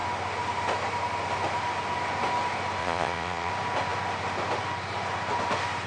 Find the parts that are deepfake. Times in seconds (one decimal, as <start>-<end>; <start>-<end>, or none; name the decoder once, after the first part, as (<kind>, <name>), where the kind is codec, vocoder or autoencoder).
2.8-3.5 (vocoder, Vocos)